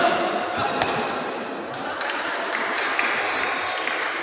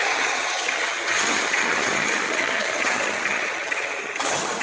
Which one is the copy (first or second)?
second